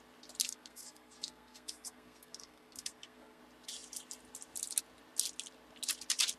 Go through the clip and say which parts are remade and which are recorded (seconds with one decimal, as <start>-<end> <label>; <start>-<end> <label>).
0.0-0.4 recorded; 0.4-3.4 remade; 3.4-6.4 recorded